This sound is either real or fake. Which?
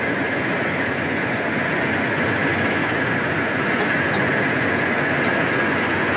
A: fake